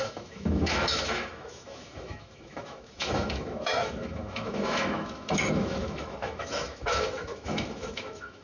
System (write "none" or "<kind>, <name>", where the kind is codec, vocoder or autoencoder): autoencoder, DAC-VAE